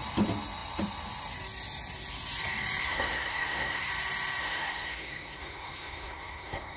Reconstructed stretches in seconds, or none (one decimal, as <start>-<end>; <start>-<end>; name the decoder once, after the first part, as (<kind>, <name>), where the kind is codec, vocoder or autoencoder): 2.8-3.9 (codec, SNAC); 4.4-6.8